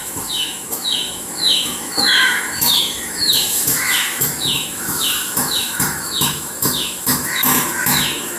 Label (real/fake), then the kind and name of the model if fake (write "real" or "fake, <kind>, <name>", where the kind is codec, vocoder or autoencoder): fake, autoencoder, DAC-VAE